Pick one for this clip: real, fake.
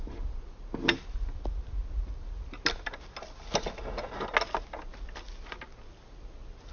real